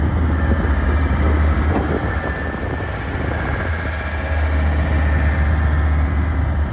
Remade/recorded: recorded